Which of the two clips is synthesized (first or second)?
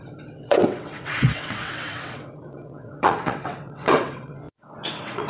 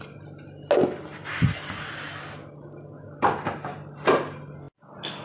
first